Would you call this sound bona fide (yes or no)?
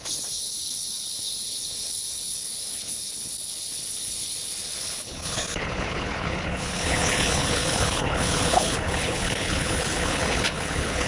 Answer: no